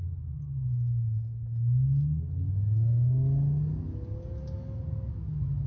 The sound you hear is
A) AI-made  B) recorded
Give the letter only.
B